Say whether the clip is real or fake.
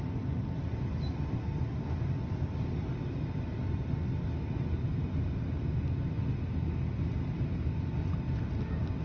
real